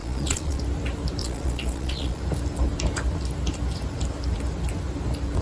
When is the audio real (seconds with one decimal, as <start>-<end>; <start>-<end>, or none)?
0.6-1.2; 2.2-5.4